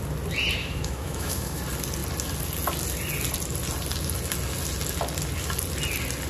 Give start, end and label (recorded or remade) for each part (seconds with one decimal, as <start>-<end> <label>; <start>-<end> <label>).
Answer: 0.0-0.6 recorded; 0.6-1.6 remade; 1.6-6.3 recorded